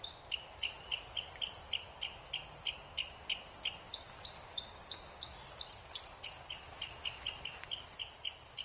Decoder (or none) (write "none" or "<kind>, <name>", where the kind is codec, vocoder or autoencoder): none